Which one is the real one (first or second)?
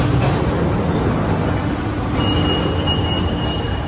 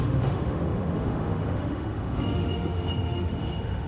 first